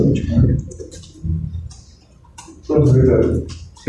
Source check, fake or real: real